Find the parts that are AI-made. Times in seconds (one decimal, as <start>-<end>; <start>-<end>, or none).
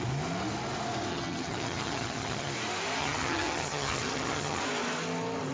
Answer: 1.1-2.5; 3.0-4.6